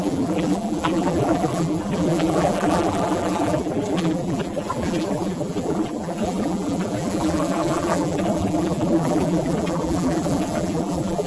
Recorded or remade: remade